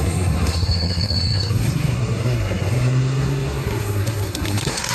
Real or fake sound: fake